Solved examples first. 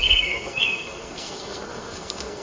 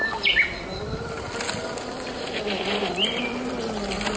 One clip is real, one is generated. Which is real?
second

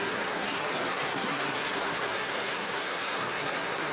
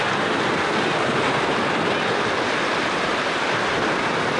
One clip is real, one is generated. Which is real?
second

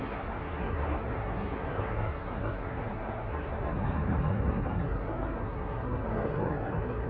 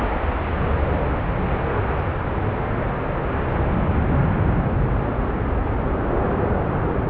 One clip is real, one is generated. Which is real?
second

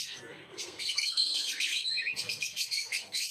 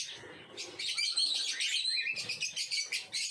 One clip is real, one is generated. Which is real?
second